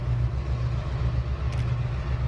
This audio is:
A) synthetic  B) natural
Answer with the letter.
B